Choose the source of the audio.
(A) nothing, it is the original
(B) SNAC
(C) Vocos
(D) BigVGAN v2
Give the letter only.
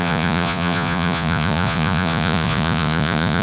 C